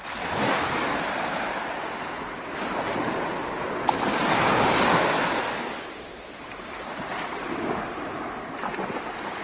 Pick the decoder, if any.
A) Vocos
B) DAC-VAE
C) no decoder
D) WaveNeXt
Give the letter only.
C